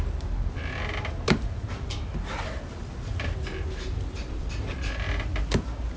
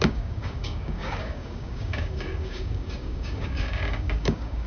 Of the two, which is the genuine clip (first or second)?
first